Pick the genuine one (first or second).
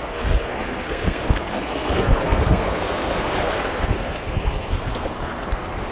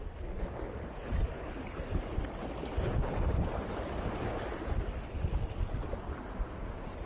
second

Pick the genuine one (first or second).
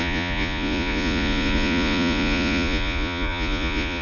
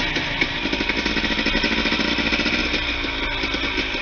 second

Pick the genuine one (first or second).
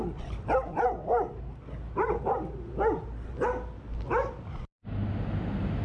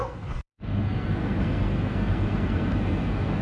first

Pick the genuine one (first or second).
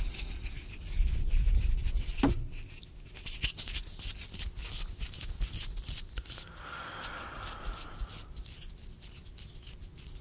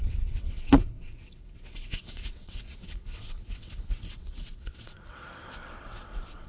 first